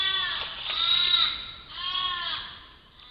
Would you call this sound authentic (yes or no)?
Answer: yes